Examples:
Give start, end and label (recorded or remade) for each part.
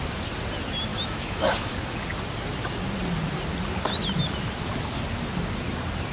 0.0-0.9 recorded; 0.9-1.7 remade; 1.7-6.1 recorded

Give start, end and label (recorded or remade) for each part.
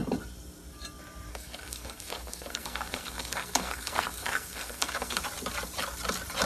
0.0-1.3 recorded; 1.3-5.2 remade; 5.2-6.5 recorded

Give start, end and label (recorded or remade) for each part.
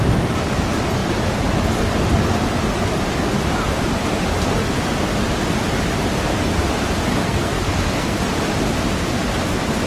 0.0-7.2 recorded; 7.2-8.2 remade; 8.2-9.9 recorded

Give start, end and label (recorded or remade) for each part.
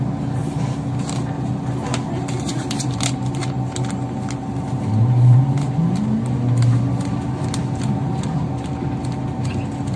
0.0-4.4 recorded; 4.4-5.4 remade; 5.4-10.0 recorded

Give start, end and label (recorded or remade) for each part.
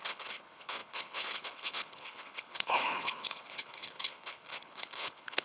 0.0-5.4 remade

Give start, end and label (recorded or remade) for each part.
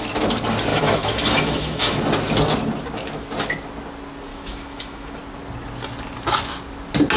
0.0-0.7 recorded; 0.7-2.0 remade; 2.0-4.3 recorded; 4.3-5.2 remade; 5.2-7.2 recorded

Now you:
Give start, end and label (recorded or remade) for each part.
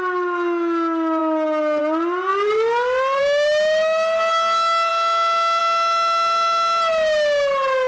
0.0-7.9 recorded